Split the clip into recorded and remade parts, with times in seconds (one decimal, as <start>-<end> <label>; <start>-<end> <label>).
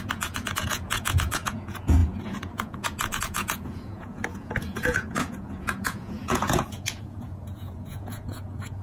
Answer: 0.0-8.8 remade